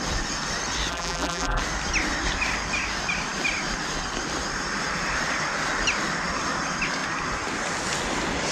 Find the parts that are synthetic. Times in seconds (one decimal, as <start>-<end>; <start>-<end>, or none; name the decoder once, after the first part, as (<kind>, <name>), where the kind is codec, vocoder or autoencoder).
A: 0.9-1.6 (vocoder, BigVGAN v2)